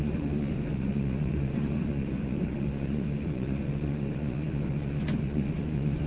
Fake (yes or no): yes